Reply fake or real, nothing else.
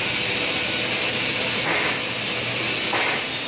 real